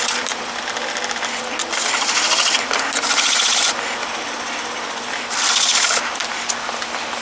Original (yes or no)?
yes